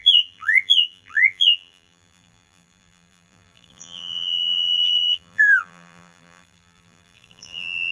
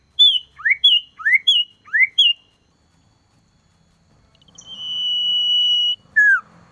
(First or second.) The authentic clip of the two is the second